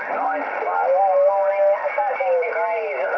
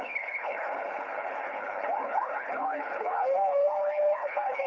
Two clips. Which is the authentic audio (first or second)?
first